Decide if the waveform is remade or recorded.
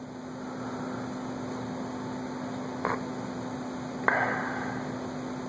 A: recorded